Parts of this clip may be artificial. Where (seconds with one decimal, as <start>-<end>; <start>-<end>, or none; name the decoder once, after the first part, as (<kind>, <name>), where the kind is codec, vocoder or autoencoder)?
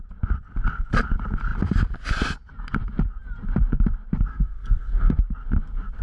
4.3-5.2 (codec, SNAC)